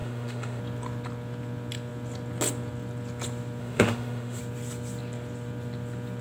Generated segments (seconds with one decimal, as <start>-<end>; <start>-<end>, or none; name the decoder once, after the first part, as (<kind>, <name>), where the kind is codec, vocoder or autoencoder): 0.0-0.6 (autoencoder, DAC-VAE); 3.6-4.4

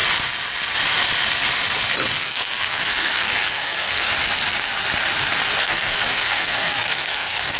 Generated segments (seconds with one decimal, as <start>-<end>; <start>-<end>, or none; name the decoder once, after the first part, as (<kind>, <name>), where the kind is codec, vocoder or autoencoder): 2.2-4.1 (codec, SNAC); 5.6-7.6

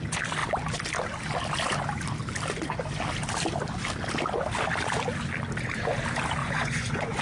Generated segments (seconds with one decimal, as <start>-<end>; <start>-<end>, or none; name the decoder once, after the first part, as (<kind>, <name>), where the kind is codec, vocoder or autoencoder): 6.4-7.2 (vocoder, Vocos)

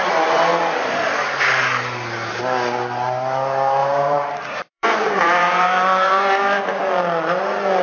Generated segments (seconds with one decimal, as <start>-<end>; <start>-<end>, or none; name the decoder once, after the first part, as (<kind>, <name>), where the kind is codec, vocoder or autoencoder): 3.8-6.8 (vocoder, BigVGAN v2)

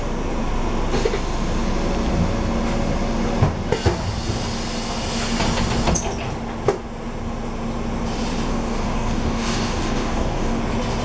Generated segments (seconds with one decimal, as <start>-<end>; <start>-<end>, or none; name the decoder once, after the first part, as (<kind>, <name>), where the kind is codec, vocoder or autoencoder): 8.5-10.6 (codec, DAC)

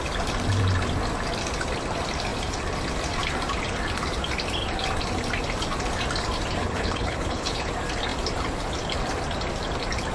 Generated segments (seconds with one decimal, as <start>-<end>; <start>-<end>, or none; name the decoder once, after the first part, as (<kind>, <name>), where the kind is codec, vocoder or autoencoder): 6.6-7.7 (codec, HILCodec)